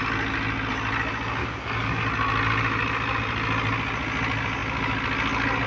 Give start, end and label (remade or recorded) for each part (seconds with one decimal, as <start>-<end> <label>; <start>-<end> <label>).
0.0-1.4 recorded; 1.4-2.0 remade; 2.0-5.7 recorded